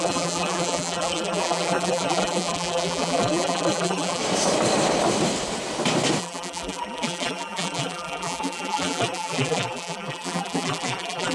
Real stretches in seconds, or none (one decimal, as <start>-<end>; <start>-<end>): 4.2-6.2